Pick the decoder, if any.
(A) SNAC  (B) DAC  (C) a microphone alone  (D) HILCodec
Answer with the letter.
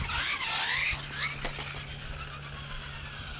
C